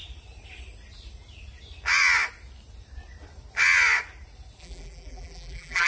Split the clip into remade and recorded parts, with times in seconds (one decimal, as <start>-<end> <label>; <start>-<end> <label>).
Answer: 0.0-4.6 recorded; 4.6-5.9 remade